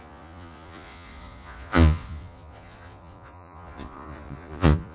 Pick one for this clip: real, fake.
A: fake